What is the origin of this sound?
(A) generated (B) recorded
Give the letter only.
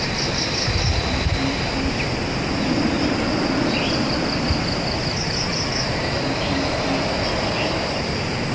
B